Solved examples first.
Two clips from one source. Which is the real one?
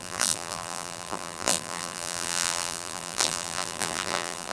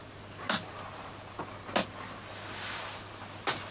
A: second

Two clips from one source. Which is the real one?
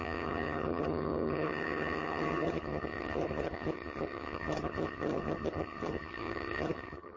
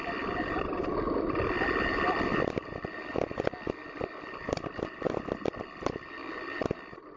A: second